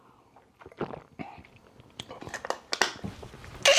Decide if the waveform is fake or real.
real